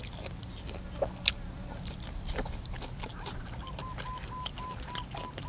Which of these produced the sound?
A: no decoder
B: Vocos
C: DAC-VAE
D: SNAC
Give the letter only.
A